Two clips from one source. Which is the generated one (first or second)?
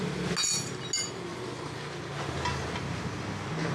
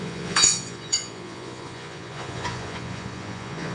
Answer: second